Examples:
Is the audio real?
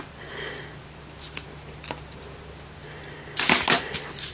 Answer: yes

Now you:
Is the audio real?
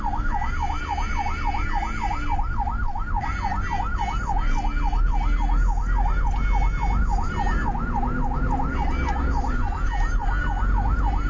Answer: yes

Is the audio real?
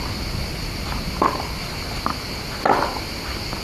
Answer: yes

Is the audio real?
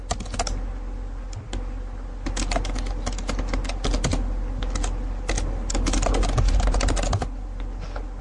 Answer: yes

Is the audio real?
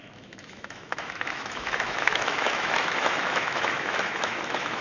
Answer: no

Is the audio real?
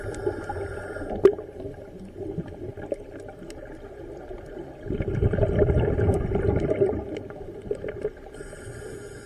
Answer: yes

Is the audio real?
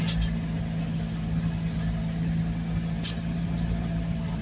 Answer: yes